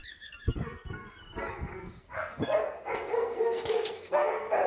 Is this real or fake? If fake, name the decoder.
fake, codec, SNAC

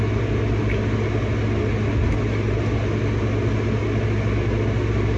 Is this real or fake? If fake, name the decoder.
real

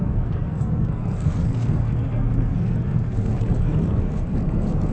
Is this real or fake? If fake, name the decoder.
fake, codec, SNAC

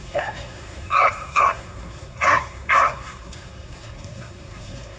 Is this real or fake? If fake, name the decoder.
fake, codec, SNAC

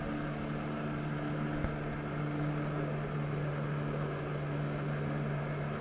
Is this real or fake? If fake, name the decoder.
real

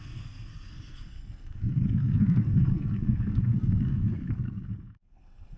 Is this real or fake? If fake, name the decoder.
fake, codec, SNAC